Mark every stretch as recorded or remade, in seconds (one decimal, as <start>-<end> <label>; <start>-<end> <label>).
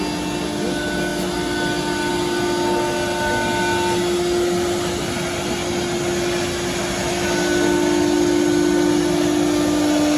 0.0-10.2 recorded